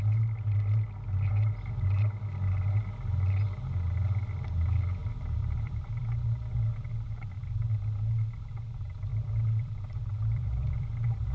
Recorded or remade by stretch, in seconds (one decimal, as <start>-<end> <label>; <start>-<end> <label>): 0.0-5.0 recorded; 5.0-6.0 remade; 6.0-9.1 recorded; 9.1-11.3 remade